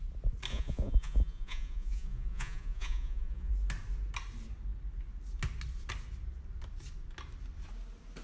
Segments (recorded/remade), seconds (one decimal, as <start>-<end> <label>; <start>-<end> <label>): 0.0-0.5 recorded; 0.5-3.5 remade; 3.5-8.2 recorded